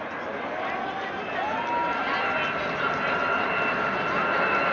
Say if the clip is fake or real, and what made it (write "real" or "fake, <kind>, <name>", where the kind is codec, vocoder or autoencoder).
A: real